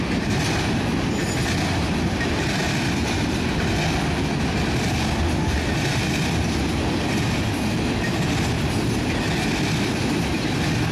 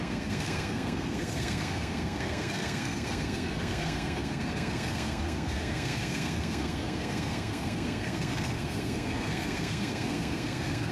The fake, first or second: second